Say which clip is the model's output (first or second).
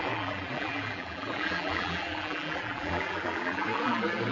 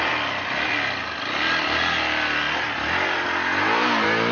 first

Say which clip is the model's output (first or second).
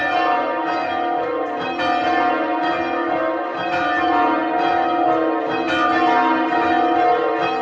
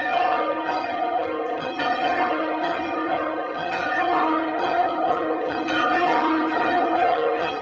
second